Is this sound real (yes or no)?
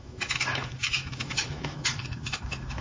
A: no